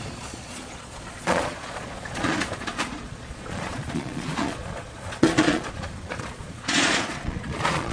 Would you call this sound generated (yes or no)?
yes